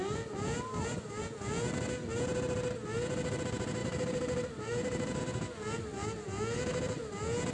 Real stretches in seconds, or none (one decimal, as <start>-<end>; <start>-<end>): 0.0-3.8; 5.2-7.5